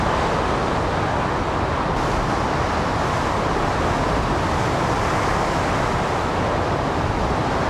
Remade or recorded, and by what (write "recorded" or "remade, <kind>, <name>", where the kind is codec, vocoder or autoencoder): recorded